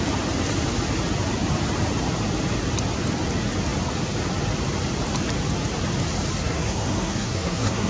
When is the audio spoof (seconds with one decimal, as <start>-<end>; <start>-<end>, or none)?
6.4-7.9